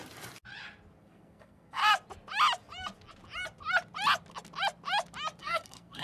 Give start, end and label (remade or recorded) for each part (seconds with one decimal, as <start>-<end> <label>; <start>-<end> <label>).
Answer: 0.0-1.0 recorded; 1.0-1.8 remade; 1.8-5.4 recorded; 5.4-6.0 remade